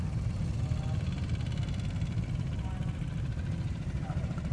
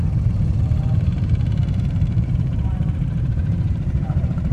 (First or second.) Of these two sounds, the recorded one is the first